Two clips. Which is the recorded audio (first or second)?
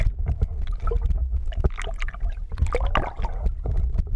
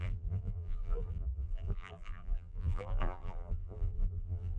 first